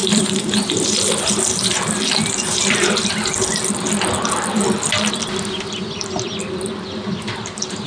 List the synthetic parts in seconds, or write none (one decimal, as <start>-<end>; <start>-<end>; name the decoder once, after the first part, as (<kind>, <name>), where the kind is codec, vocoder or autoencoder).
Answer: 0.0-3.5 (vocoder, BigVGAN v2)